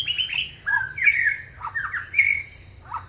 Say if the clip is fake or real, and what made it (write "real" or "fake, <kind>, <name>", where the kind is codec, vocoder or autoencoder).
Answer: real